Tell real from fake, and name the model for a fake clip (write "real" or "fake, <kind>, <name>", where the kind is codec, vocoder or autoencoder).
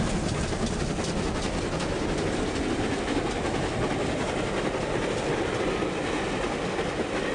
real